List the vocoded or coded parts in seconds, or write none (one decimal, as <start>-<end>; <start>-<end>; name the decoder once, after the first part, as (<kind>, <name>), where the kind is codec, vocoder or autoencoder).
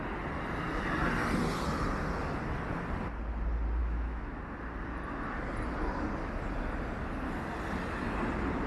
3.8-4.4 (autoencoder, DAC-VAE)